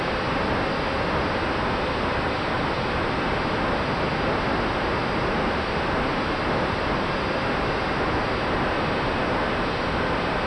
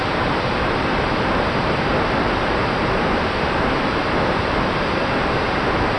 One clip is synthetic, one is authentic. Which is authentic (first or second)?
first